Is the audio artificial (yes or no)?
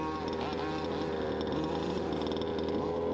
no